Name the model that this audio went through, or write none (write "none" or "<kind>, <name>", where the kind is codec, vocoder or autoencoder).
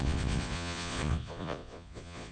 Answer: vocoder, Vocos